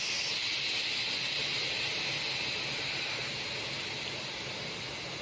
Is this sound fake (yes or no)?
no